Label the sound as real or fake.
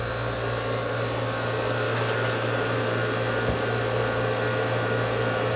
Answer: real